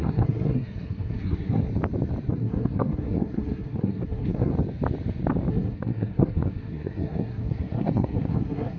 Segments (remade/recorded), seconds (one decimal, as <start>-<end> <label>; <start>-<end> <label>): 0.0-1.7 remade; 1.7-2.3 recorded; 2.3-4.5 remade; 4.5-5.5 recorded; 5.5-8.8 remade